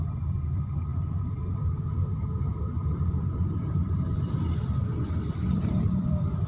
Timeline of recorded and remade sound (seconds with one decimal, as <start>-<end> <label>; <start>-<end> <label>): 0.0-2.5 recorded; 2.5-6.5 remade